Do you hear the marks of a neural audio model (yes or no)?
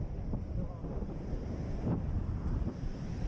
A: no